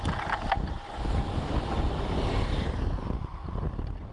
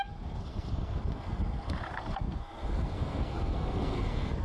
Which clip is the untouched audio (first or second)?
first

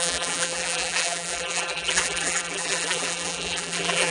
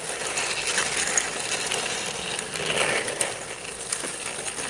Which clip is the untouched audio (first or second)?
second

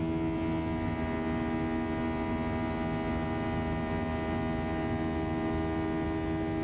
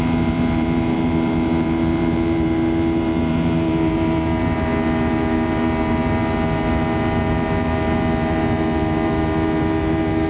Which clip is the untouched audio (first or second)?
first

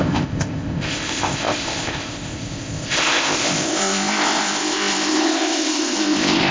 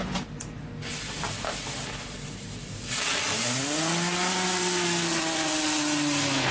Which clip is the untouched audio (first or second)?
second